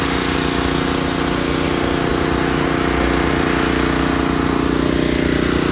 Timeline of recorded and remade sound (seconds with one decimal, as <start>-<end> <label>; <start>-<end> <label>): 0.0-5.7 recorded